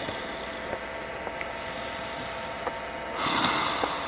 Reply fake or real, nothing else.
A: real